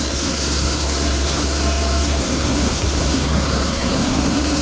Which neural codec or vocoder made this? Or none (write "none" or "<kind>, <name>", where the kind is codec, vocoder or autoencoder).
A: codec, SNAC